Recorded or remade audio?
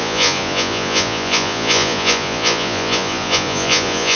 remade